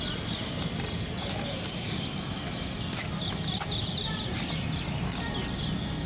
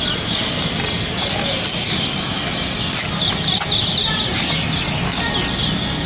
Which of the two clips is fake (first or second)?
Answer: first